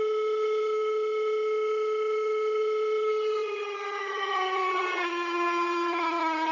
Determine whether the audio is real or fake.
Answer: fake